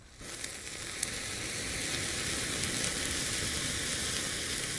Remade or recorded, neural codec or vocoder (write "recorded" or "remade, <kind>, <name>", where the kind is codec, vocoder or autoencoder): recorded